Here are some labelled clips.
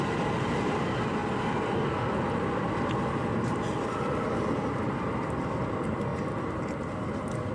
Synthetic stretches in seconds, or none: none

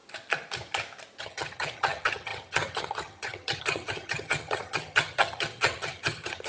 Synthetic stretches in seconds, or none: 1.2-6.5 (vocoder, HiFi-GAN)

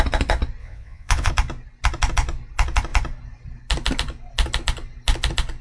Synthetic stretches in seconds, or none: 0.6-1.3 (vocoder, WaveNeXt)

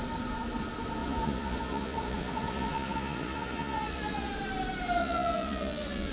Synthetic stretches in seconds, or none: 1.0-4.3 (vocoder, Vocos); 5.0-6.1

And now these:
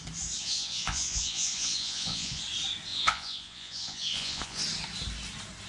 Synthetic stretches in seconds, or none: 0.4-2.4 (vocoder, Vocos); 2.9-4.6

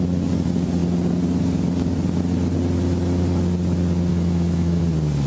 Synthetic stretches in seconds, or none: 4.1-4.8 (autoencoder, DAC-VAE)

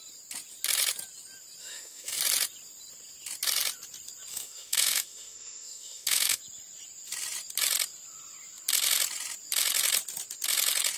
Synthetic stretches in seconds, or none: 1.6-2.2 (autoencoder, DAC-VAE); 4.3-6.4

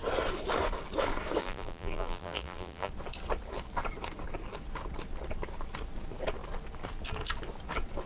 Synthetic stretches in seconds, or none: 1.4-2.9 (vocoder, BigVGAN v2)